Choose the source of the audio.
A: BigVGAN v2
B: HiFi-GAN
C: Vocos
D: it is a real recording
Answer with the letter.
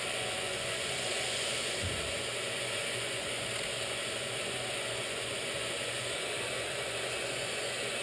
C